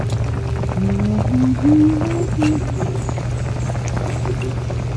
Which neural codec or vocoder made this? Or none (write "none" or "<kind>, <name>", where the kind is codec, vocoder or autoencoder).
none